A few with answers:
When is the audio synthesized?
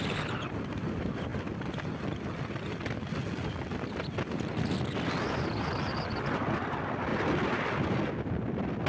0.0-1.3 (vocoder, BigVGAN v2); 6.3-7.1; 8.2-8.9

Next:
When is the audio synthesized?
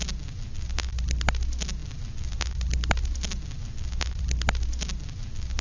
1.8-4.2 (vocoder, BigVGAN v2)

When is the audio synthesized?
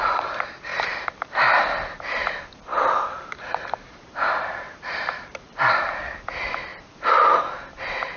0.7-2.3 (vocoder, BigVGAN v2); 2.7-5.6; 6.7-7.4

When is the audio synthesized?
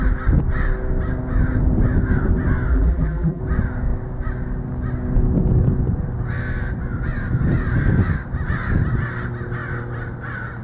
2.7-3.4 (vocoder, BigVGAN v2)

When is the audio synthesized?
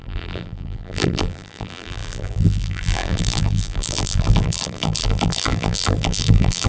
0.0-6.7 (vocoder, BigVGAN v2)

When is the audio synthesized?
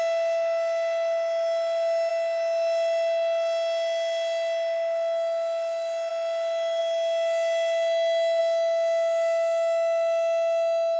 none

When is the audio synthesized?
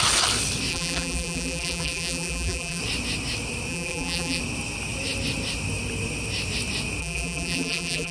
0.7-2.8 (vocoder, BigVGAN v2); 3.7-4.4; 7.0-8.1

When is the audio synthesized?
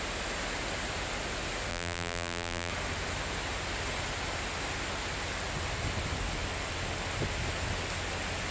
1.7-2.7 (vocoder, BigVGAN v2)